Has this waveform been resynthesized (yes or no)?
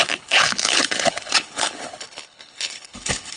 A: yes